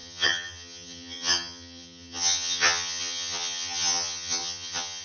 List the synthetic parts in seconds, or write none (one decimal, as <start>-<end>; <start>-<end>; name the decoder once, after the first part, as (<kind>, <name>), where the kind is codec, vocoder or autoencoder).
0.0-5.0 (vocoder, HiFi-GAN)